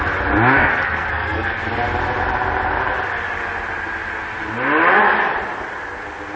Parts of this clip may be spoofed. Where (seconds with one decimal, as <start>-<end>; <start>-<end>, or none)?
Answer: 0.6-1.6